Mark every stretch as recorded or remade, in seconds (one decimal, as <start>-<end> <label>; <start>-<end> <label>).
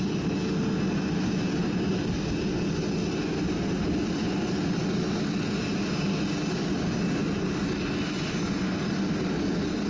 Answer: 0.0-9.9 recorded